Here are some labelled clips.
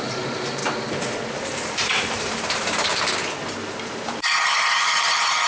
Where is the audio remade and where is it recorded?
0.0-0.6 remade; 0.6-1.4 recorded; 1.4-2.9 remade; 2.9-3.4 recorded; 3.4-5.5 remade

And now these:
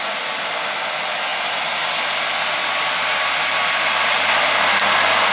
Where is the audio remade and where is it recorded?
0.0-5.3 recorded

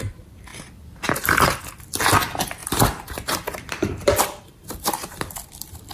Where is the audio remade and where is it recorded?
0.0-0.5 recorded; 0.5-1.6 remade; 1.6-2.6 recorded; 2.6-5.9 remade